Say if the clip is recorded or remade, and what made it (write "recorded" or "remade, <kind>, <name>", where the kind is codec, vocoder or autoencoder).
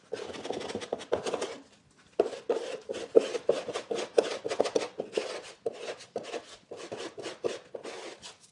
recorded